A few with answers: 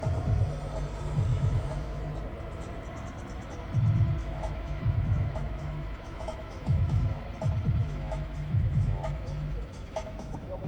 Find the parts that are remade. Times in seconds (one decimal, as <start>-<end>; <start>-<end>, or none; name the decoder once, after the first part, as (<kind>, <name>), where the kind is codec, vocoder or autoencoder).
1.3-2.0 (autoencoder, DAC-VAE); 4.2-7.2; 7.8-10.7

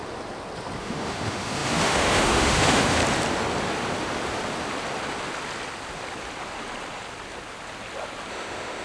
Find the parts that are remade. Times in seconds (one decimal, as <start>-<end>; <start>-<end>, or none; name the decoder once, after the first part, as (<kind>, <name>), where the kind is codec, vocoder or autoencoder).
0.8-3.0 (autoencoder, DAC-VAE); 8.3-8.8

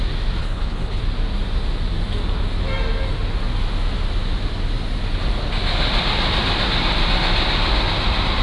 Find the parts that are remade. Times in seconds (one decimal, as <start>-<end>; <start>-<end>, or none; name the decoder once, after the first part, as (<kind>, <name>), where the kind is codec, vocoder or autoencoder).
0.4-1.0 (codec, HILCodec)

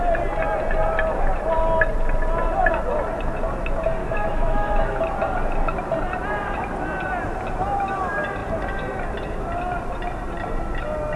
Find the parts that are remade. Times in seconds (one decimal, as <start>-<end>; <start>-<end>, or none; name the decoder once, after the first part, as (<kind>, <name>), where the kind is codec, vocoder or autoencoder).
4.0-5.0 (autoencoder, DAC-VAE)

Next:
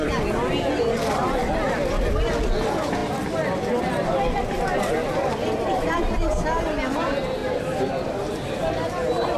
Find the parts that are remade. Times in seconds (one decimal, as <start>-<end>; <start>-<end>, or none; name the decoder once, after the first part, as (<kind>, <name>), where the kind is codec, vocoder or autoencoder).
5.4-6.6 (vocoder, BigVGAN v2); 7.4-8.7